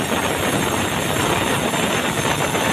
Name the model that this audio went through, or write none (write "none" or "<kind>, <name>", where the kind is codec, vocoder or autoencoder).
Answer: none